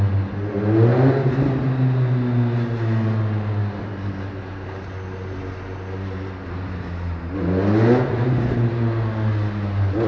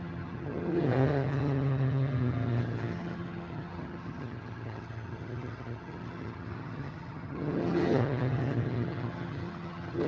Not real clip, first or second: second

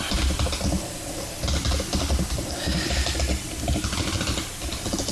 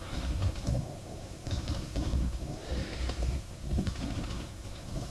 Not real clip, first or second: second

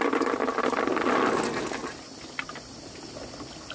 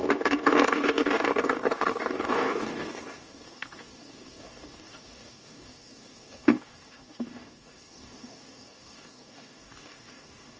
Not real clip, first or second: second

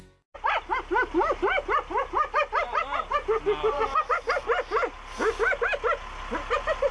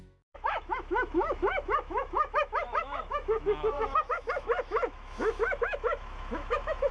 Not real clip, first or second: second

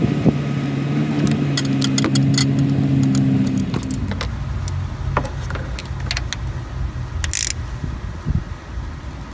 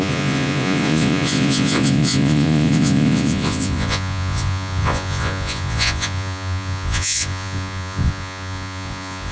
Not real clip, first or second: second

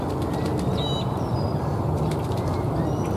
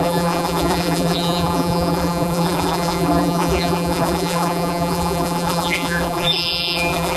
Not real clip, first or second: second